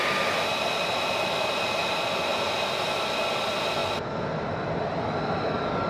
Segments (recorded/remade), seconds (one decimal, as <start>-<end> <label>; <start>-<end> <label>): 0.0-5.9 recorded